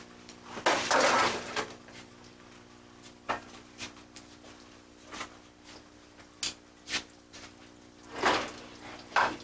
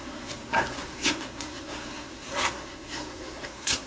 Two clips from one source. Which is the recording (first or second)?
first